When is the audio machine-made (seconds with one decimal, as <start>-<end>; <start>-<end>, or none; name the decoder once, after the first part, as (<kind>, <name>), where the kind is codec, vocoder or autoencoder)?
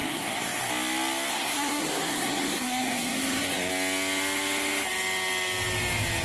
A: 0.0-0.7 (codec, SNAC); 1.3-3.7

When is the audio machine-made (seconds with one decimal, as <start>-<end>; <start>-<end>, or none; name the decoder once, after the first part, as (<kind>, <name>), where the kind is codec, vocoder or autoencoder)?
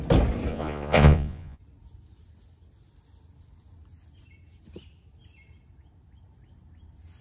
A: 0.5-1.6 (vocoder, Vocos)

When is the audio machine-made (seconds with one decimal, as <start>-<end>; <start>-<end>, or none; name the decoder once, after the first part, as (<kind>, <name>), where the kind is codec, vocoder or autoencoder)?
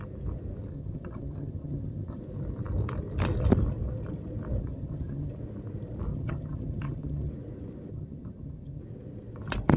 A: 0.7-2.2 (vocoder, HiFi-GAN); 4.6-5.3; 6.1-7.3; 7.9-8.8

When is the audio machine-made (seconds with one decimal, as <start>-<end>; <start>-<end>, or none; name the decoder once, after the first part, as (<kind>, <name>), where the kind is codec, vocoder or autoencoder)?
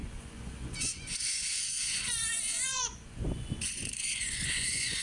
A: 0.0-5.0 (vocoder, Vocos)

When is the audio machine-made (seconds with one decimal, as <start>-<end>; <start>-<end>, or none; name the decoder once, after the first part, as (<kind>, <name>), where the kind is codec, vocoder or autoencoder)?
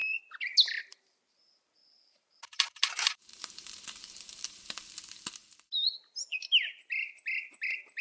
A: 1.8-4.6 (vocoder, BigVGAN v2)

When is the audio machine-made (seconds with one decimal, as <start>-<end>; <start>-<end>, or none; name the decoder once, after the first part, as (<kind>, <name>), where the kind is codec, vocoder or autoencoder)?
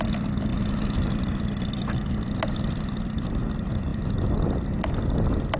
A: none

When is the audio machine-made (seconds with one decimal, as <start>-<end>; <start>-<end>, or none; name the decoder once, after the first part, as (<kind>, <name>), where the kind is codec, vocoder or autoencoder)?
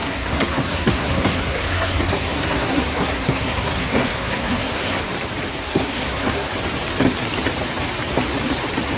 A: 0.0-5.0 (codec, SNAC); 5.5-6.5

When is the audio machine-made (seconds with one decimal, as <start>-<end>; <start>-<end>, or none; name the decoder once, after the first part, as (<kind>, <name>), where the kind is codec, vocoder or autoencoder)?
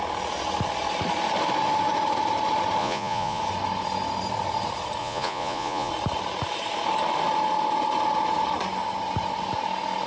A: 2.8-3.4 (vocoder, Vocos); 5.0-5.9